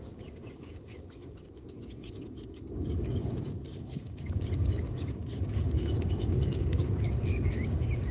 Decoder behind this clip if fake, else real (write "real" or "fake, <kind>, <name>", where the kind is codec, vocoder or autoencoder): fake, codec, DAC